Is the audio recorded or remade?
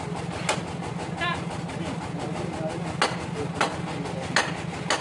recorded